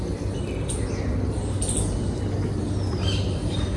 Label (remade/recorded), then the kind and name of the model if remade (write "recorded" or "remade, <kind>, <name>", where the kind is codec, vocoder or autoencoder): recorded